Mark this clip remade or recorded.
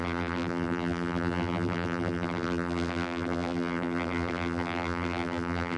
remade